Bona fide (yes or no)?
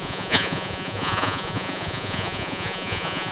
no